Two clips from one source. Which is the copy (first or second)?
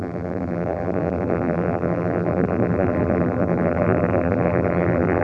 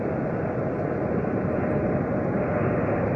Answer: first